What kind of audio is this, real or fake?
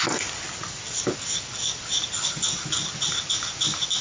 real